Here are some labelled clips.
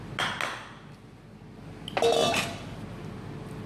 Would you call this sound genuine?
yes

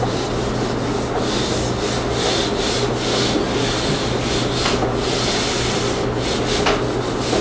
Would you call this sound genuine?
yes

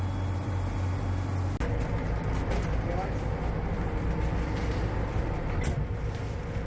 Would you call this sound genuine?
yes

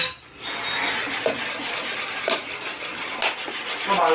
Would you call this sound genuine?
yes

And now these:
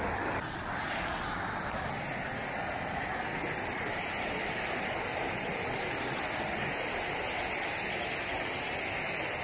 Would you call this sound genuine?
yes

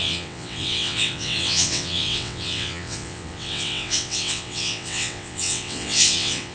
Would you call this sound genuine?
no